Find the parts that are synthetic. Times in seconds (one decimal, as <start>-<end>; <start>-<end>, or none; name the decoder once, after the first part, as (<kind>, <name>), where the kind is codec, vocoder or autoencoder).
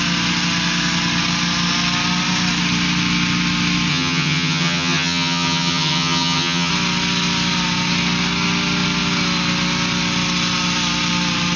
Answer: 3.9-6.7 (vocoder, HiFi-GAN)